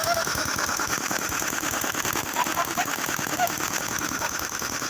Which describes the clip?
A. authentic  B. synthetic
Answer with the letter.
B